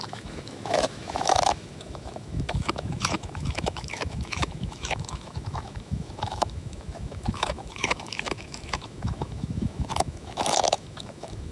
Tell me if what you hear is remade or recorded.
remade